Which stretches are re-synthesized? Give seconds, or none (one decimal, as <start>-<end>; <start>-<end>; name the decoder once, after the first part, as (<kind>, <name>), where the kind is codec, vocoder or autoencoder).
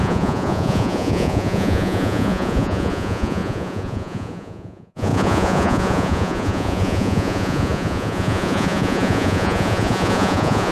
0.0-10.7 (vocoder, Vocos)